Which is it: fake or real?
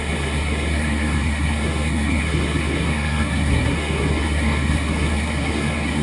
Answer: fake